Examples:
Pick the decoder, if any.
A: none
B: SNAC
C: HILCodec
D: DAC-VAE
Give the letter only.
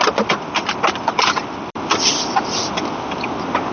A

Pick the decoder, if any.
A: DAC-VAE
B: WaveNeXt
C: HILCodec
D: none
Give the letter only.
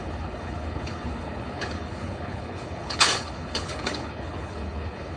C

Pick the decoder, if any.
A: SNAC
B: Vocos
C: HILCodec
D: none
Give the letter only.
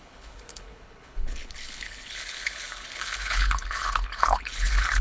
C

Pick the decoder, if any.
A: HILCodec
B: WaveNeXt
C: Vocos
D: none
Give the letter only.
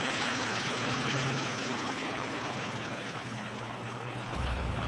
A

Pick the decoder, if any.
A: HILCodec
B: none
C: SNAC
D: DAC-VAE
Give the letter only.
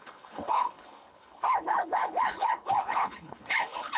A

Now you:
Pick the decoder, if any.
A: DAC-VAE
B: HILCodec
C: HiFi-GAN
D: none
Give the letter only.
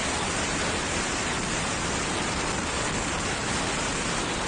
D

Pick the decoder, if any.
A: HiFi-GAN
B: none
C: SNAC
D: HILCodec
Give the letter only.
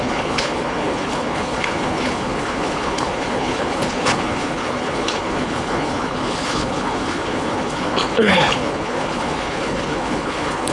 D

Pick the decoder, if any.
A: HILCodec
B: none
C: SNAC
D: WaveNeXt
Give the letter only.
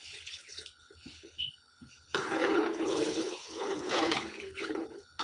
A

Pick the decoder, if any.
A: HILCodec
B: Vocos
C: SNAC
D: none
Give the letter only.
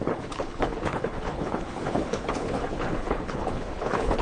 A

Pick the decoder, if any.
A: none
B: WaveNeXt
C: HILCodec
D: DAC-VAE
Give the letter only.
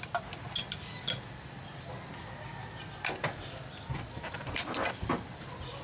A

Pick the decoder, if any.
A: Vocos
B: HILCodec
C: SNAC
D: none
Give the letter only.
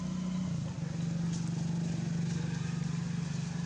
D